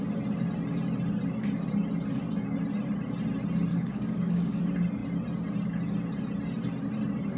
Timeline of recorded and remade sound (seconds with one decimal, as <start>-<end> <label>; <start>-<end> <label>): 0.0-3.7 recorded; 3.7-4.6 remade; 4.6-7.4 recorded